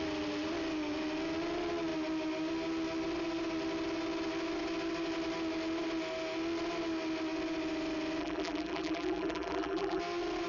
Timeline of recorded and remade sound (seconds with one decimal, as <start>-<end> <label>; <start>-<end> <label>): 0.0-8.2 recorded; 8.2-10.0 remade; 10.0-10.5 recorded